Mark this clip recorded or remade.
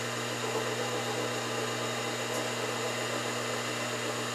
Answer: recorded